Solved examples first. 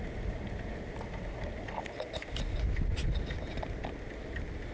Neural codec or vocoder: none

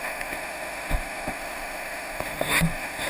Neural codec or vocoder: autoencoder, DAC-VAE